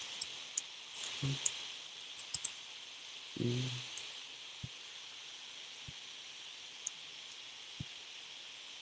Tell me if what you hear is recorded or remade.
recorded